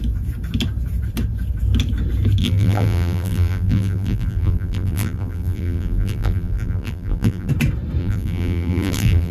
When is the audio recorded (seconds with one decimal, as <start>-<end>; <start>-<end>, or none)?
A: 0.0-2.4; 7.5-8.0